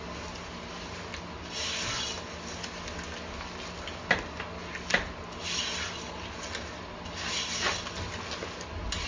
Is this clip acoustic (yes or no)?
yes